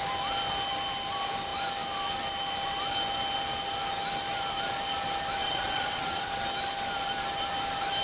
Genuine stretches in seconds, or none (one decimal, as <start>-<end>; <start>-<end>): 0.0-5.4; 6.3-8.0